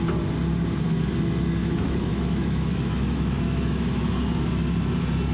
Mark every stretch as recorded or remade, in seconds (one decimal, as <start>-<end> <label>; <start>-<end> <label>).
0.0-1.6 recorded; 1.6-4.1 remade; 4.1-5.3 recorded

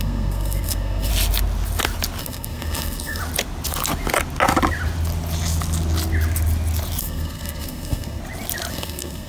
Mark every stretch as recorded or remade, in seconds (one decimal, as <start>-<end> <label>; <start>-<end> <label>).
0.0-1.1 remade; 1.1-2.2 recorded; 2.2-3.2 remade; 3.2-7.0 recorded; 7.0-8.2 remade; 8.2-8.7 recorded; 8.7-9.3 remade

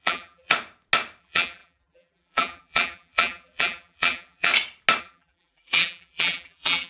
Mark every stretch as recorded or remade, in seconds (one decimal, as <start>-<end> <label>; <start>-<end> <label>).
0.0-0.5 remade; 0.5-1.2 recorded; 1.2-4.5 remade; 4.5-5.0 recorded; 5.0-6.9 remade

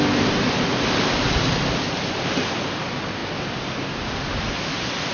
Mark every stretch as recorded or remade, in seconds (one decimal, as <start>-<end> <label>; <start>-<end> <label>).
0.0-5.1 recorded

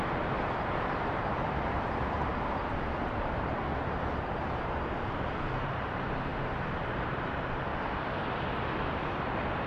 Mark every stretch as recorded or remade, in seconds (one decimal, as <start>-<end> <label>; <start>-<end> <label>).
0.0-2.3 remade; 2.3-3.0 recorded; 3.0-3.7 remade; 3.7-5.4 recorded; 5.4-7.7 remade; 7.7-9.7 recorded